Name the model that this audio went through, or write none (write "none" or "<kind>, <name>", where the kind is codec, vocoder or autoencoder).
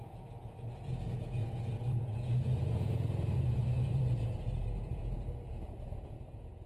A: vocoder, Vocos